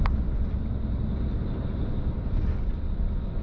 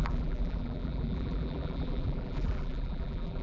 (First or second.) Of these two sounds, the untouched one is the first